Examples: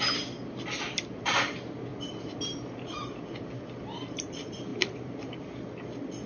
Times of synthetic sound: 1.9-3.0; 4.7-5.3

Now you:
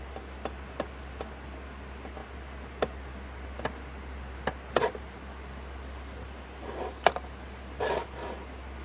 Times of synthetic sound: none

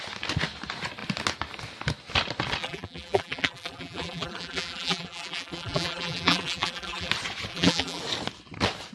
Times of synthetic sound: 2.6-7.1; 7.5-8.0

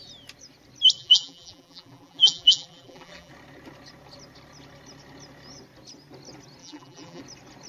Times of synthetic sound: 1.0-3.3; 6.6-7.2

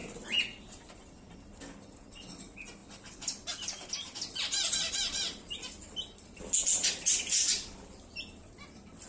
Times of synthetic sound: none

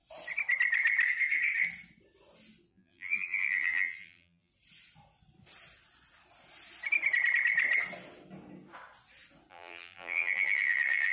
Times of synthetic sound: 2.7-4.5; 9.5-11.1

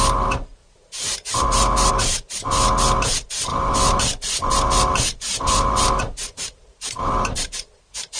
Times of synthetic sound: 0.6-1.9; 3.5-7.7